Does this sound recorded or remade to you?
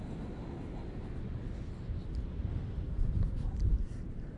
recorded